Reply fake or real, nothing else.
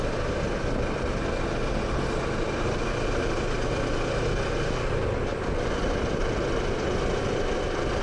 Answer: real